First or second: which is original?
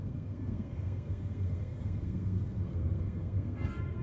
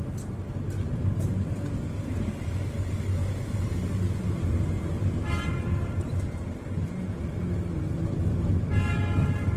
second